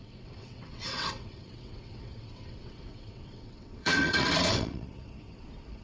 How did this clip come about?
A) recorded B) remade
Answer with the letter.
B